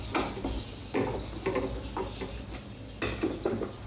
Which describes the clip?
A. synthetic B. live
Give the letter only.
B